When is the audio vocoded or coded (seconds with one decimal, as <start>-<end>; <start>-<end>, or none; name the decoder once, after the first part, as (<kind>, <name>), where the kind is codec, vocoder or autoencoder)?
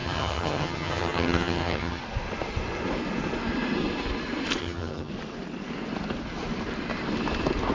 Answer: 0.0-2.0 (vocoder, HiFi-GAN); 4.6-5.1